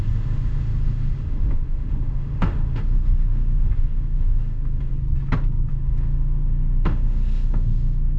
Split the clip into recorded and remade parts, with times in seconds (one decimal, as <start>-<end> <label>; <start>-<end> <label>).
0.0-4.9 remade; 4.9-5.7 recorded; 5.7-8.2 remade